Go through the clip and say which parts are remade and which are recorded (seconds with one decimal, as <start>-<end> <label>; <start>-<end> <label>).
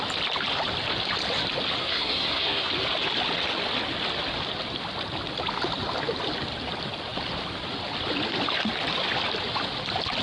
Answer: 0.0-1.8 recorded; 1.8-2.7 remade; 2.7-10.2 recorded